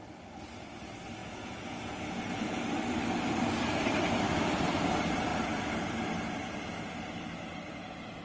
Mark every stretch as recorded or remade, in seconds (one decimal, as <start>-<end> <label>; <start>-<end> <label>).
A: 0.0-1.2 recorded; 1.2-2.6 remade; 2.6-8.2 recorded